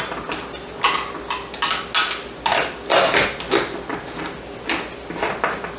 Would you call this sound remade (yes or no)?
no